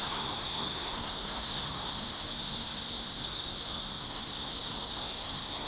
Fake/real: fake